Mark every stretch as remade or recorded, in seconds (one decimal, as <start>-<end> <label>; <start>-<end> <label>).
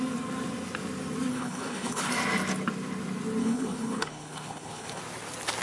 0.0-1.3 recorded; 1.3-2.1 remade; 2.1-3.4 recorded; 3.4-5.0 remade; 5.0-5.6 recorded